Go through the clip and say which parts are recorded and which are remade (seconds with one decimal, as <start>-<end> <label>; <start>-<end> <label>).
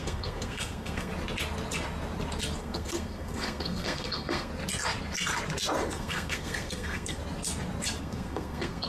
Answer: 0.0-1.1 remade; 1.1-2.6 recorded; 2.6-4.5 remade; 4.5-5.9 recorded; 5.9-7.2 remade; 7.2-8.0 recorded; 8.0-8.9 remade